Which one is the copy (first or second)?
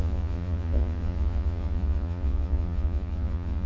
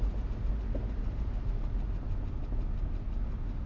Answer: first